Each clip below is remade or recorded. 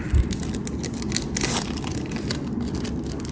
recorded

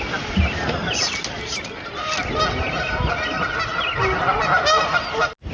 recorded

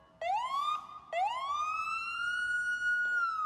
recorded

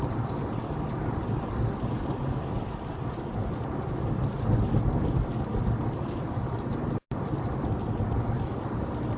recorded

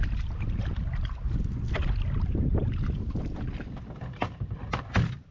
recorded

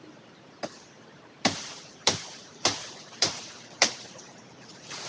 remade